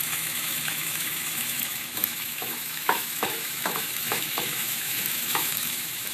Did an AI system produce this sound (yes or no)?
yes